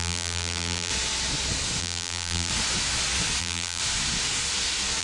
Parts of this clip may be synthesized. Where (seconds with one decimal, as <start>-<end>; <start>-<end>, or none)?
0.0-0.9; 1.8-2.5; 3.4-3.8